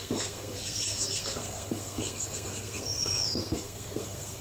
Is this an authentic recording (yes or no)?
no